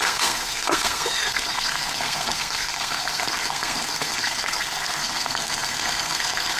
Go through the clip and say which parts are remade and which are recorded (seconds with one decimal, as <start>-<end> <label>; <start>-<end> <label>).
0.0-6.6 remade